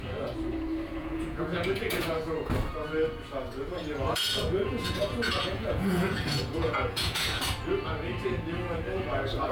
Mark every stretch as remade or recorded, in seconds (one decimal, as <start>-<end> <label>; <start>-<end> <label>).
0.0-1.0 recorded; 1.0-2.5 remade; 2.5-3.8 recorded; 3.8-7.4 remade; 7.4-9.5 recorded